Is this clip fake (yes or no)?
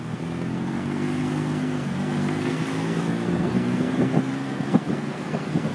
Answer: yes